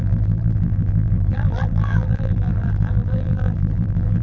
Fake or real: fake